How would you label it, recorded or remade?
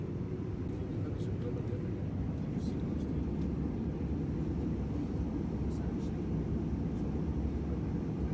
recorded